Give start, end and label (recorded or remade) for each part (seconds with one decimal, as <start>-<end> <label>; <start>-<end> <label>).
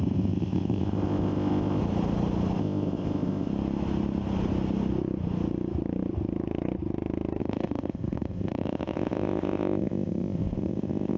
0.0-1.8 remade; 1.8-2.6 recorded; 2.6-3.5 remade; 3.5-7.4 recorded; 7.4-11.2 remade